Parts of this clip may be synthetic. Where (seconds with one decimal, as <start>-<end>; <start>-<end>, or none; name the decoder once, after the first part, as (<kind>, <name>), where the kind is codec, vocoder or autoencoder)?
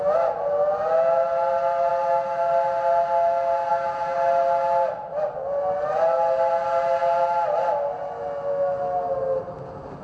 none